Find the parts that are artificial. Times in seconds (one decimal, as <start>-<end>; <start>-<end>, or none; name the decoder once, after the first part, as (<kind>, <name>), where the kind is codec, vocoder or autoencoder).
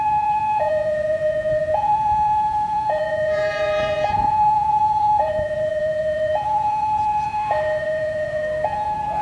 0.0-9.2 (vocoder, Vocos)